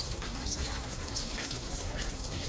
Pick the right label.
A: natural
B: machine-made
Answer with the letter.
B